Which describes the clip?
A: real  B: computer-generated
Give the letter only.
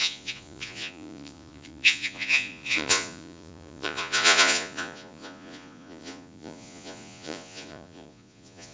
B